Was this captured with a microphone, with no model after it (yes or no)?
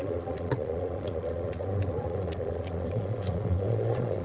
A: no